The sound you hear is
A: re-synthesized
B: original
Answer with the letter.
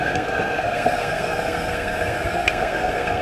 A